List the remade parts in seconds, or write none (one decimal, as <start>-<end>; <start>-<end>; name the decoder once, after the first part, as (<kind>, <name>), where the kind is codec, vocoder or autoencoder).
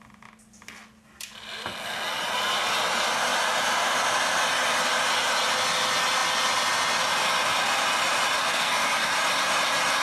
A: 8.4-9.1 (codec, SNAC)